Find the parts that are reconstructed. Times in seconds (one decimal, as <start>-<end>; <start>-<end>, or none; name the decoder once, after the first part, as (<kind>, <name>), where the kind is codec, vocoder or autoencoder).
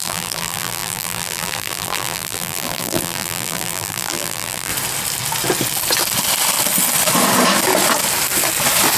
0.0-4.7 (vocoder, BigVGAN v2)